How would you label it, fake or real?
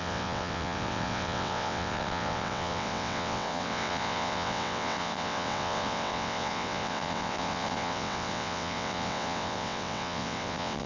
fake